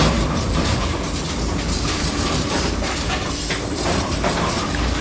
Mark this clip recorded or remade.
remade